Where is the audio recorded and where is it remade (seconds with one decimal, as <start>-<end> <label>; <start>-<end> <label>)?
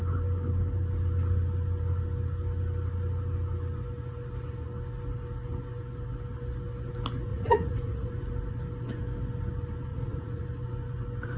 0.0-7.3 recorded; 7.3-8.1 remade; 8.1-9.9 recorded; 9.9-10.4 remade; 10.4-11.4 recorded